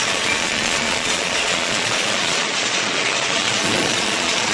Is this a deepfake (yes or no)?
yes